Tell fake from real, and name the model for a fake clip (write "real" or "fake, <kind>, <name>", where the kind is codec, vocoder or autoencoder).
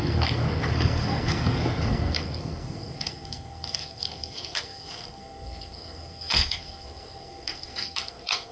fake, codec, SNAC